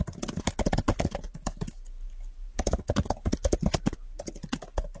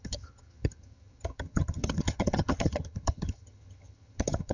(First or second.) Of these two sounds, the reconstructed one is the second